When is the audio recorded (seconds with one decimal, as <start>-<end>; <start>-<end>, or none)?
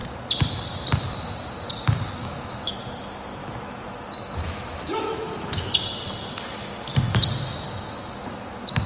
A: 0.0-2.2; 2.7-3.4; 5.7-8.9